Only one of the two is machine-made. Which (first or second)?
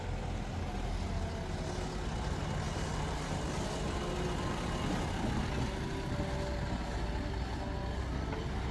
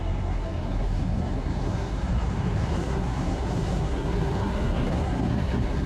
second